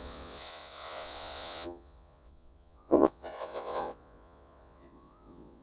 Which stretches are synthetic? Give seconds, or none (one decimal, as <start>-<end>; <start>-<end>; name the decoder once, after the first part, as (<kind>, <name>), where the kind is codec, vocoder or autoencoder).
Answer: 0.0-5.6 (vocoder, Vocos)